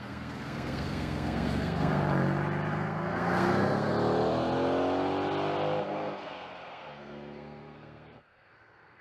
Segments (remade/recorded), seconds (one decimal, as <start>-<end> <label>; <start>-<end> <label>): 0.0-2.0 remade; 2.0-2.7 recorded; 2.7-3.9 remade; 3.9-5.8 recorded; 5.8-9.0 remade